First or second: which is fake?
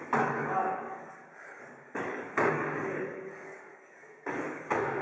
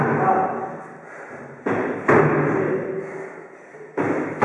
first